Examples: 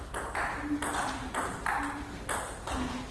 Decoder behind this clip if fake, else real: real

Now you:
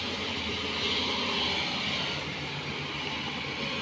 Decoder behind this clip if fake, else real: real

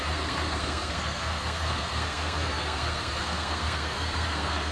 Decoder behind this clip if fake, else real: fake, codec, SNAC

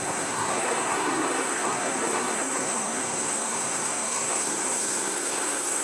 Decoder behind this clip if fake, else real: fake, codec, SNAC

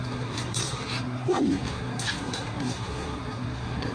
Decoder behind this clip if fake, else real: fake, codec, SNAC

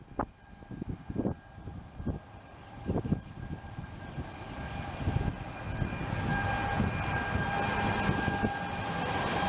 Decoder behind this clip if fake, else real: real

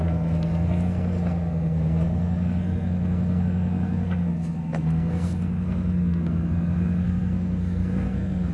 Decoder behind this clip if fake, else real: fake, codec, SNAC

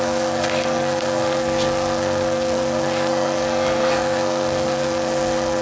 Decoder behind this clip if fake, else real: fake, codec, SNAC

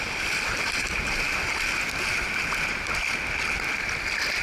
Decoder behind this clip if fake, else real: real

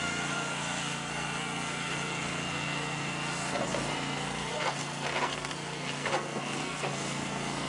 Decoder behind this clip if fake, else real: fake, codec, SNAC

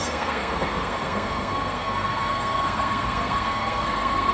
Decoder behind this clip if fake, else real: fake, codec, SNAC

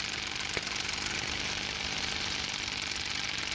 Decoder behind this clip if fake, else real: real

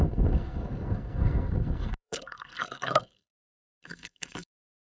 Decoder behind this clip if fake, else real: fake, codec, SNAC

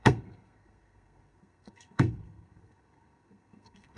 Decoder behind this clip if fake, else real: fake, codec, SNAC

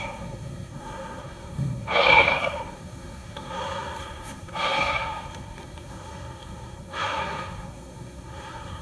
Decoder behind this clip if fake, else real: fake, codec, SNAC